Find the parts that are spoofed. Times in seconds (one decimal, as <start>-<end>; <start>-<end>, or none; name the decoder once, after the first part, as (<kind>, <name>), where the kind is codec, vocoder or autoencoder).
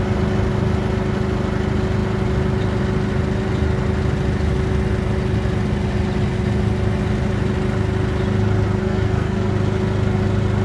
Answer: 8.8-9.5 (codec, SNAC)